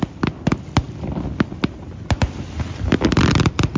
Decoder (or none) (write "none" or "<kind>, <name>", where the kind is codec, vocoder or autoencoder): none